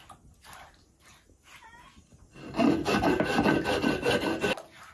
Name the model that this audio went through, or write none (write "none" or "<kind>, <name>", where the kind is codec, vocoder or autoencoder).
none